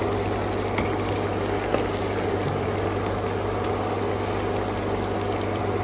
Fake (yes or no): no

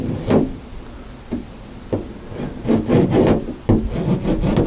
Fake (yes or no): no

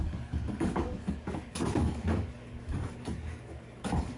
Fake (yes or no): yes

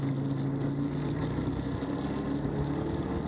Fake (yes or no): no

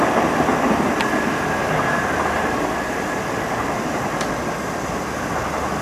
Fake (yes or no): no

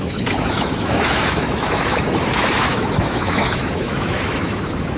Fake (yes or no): yes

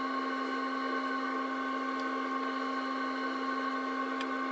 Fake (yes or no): no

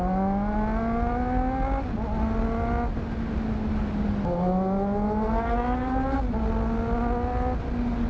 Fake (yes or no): no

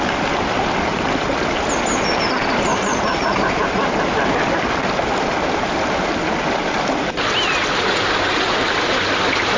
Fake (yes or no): no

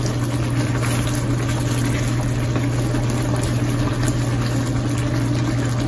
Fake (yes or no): no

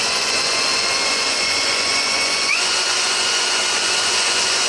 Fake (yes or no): yes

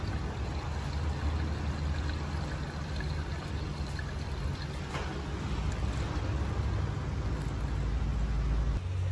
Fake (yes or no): no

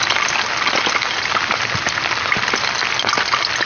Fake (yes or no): no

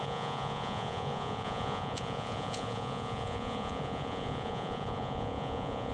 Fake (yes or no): yes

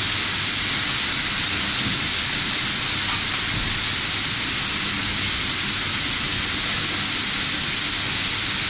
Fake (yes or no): no